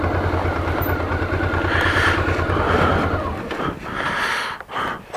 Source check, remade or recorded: recorded